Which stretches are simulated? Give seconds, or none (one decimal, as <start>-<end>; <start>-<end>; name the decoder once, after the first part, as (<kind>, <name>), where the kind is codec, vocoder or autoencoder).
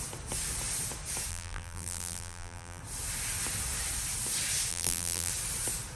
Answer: 1.3-2.8 (vocoder, BigVGAN v2); 4.7-5.3